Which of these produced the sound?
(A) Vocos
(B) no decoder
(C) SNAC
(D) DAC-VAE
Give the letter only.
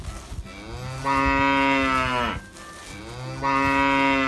B